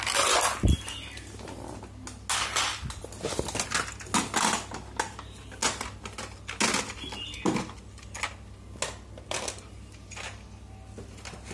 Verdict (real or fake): real